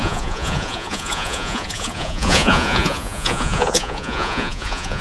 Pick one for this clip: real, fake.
fake